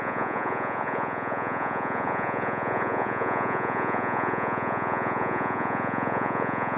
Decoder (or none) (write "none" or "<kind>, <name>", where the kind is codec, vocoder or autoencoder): vocoder, Vocos